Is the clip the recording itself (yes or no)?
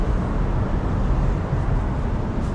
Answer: yes